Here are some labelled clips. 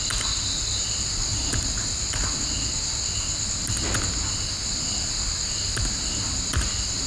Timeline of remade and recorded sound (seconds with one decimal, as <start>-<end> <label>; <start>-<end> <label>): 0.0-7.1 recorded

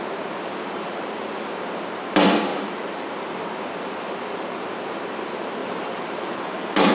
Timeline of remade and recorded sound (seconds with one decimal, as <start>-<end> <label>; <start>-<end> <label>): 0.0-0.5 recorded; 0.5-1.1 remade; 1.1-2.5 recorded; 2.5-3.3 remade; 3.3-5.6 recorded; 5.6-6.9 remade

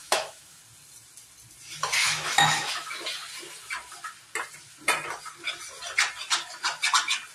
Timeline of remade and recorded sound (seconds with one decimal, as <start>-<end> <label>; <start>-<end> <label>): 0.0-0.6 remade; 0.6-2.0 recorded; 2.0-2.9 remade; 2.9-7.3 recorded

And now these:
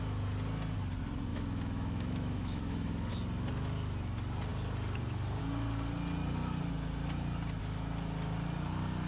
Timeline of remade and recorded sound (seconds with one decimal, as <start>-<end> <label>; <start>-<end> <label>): 0.0-1.3 recorded; 1.3-3.1 remade; 3.1-9.1 recorded

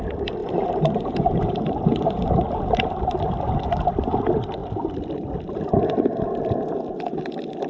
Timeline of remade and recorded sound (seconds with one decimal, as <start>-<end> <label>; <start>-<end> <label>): 0.0-0.4 recorded; 0.4-3.5 remade; 3.5-7.7 recorded

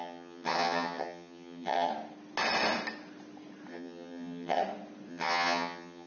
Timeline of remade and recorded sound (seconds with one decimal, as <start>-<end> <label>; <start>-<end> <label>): 0.0-1.9 remade; 1.9-3.7 recorded; 3.7-4.6 remade; 4.6-5.1 recorded; 5.1-6.1 remade